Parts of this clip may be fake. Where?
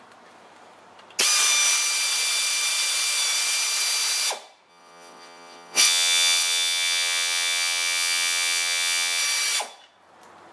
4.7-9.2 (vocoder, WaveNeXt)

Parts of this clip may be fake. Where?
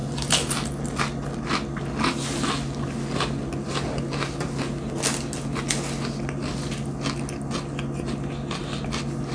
none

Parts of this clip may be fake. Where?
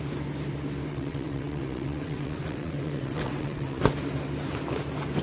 0.9-3.8 (vocoder, WaveNeXt)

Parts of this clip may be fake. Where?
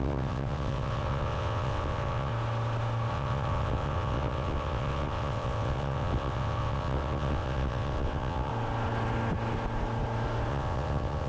0.0-2.3 (vocoder, WaveNeXt); 3.1-8.5; 10.5-11.3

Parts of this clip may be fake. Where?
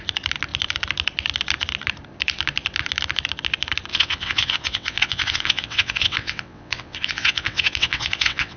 3.9-8.6 (vocoder, WaveNeXt)